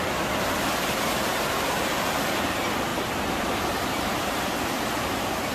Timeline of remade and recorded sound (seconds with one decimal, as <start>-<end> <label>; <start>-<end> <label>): 0.0-5.5 recorded